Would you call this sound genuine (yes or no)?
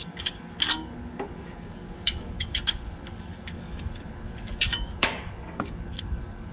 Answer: no